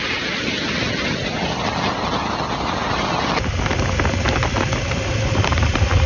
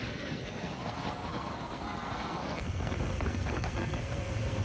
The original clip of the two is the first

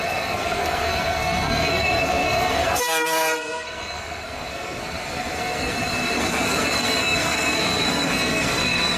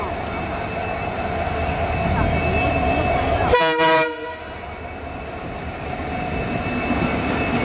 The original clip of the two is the second